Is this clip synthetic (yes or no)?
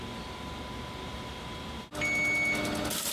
no